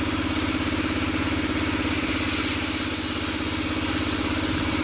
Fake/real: real